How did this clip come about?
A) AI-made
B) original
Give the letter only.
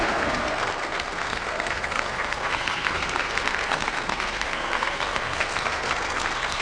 A